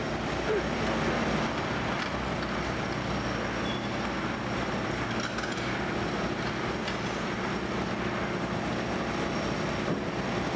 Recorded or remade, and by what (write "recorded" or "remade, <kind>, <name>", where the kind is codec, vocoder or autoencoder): recorded